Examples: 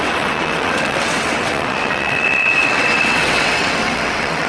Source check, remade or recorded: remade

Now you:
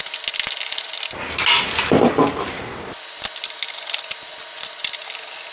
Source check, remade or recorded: recorded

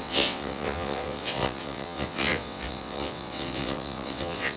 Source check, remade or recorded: remade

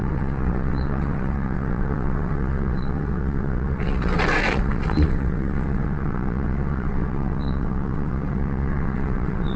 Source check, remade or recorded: remade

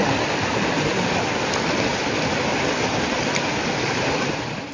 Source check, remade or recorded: recorded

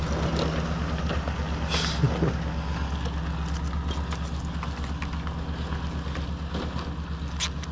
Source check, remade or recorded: recorded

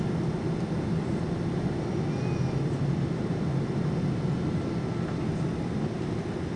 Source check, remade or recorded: recorded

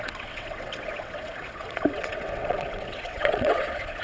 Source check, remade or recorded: remade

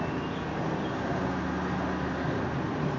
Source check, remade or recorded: recorded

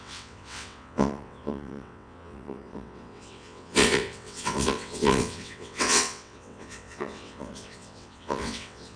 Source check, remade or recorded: remade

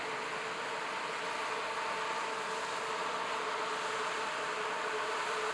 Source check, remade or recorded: recorded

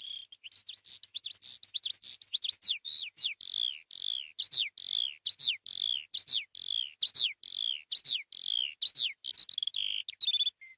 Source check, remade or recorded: recorded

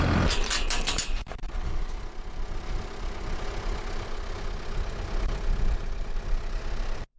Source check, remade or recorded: recorded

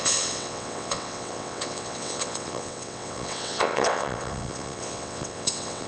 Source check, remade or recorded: remade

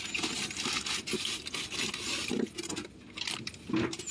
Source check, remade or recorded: recorded